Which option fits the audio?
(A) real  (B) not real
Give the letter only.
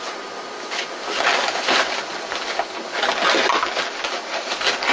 A